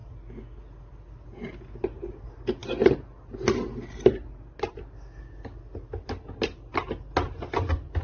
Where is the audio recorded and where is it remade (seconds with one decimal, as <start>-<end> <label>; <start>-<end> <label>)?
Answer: 0.0-8.0 recorded